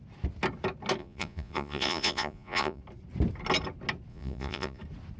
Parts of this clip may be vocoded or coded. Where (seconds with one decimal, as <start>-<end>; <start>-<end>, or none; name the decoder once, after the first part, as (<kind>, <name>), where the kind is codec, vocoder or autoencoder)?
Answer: 1.0-2.8 (vocoder, Vocos); 4.1-4.8